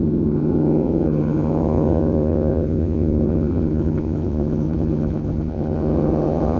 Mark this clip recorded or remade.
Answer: remade